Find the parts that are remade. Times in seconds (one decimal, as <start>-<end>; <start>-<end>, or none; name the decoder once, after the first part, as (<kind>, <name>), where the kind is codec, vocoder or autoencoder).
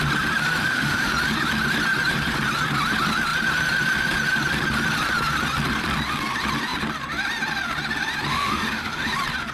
0.6-1.1 (autoencoder, DAC-VAE); 8.3-9.1